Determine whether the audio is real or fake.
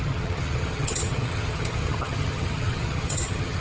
fake